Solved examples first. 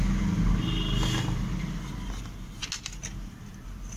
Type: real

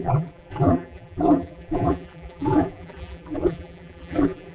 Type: fake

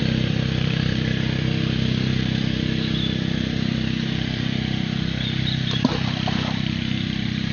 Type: fake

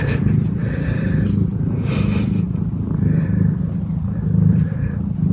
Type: fake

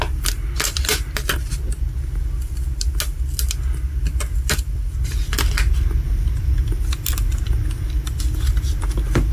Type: real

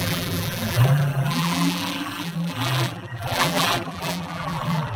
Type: fake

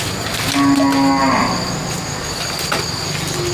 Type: real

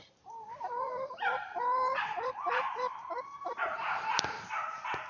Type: fake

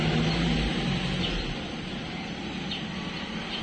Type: real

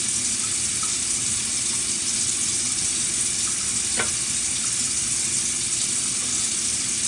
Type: real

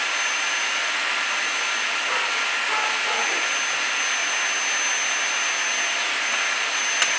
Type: real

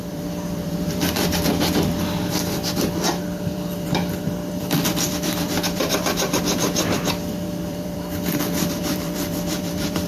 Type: fake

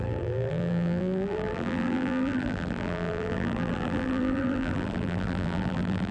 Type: fake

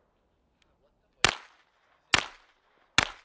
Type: real